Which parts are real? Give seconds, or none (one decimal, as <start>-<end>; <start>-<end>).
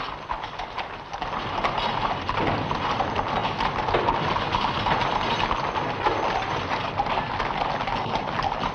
0.0-8.7